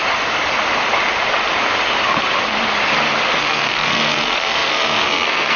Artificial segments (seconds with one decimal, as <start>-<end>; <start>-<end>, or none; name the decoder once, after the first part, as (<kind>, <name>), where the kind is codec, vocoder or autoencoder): 3.4-5.6 (codec, SNAC)